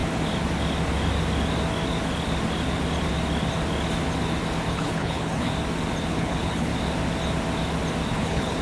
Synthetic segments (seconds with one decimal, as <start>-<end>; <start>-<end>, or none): 4.7-5.5; 6.1-6.7; 8.1-8.6